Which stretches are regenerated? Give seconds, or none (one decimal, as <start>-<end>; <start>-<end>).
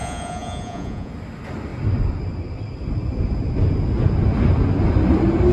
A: 0.0-1.1